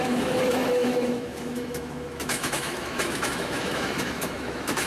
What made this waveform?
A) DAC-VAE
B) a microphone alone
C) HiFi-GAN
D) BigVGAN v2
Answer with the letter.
A